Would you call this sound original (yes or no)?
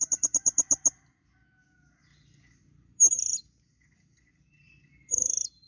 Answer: yes